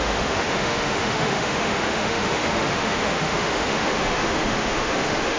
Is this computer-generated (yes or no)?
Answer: yes